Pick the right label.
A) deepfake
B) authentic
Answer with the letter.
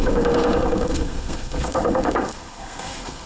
A